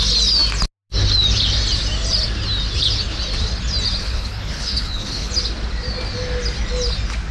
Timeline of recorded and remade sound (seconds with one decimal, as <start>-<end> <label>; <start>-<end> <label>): 0.0-4.0 recorded; 4.0-5.3 remade; 5.3-7.3 recorded